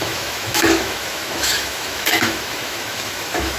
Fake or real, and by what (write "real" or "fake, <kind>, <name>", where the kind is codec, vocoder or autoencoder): fake, autoencoder, DAC-VAE